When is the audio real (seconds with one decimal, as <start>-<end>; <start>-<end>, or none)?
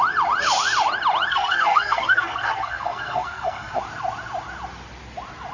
0.0-1.3; 3.8-5.5